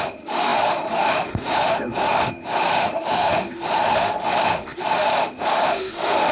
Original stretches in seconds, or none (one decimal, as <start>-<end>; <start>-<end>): none